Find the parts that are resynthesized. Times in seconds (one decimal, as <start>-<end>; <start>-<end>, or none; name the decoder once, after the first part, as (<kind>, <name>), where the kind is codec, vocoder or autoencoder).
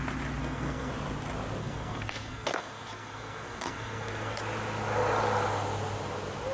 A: 0.4-0.9 (codec, SNAC); 1.6-4.4